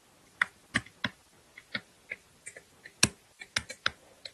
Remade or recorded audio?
recorded